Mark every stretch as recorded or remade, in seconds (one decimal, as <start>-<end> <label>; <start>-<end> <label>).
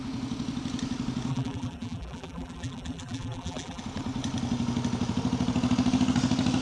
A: 0.0-1.3 recorded; 1.3-3.8 remade; 3.8-6.6 recorded